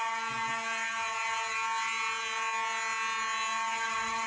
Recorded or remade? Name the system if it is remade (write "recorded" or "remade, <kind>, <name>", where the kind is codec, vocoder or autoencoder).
recorded